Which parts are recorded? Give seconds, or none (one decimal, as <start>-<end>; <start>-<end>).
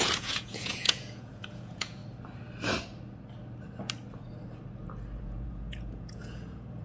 2.0-5.2